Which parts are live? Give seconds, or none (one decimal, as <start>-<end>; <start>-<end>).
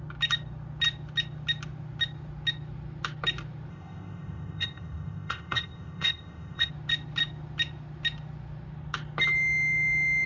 0.0-3.7; 6.7-10.3